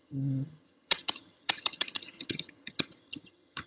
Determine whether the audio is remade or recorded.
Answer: remade